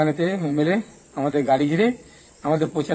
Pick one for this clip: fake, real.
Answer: fake